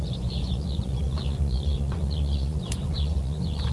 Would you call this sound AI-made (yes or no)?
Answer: yes